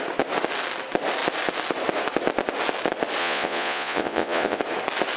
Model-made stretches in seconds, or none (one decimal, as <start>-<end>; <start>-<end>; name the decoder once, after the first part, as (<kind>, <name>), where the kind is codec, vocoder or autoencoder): 3.2-4.6 (vocoder, Vocos)